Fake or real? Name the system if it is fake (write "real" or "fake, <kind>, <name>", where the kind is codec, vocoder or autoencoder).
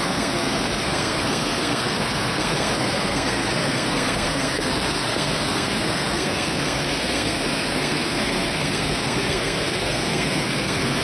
fake, codec, SNAC